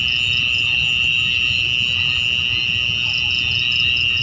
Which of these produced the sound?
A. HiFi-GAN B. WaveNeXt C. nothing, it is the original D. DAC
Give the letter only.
C